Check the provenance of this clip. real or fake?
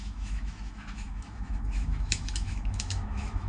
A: fake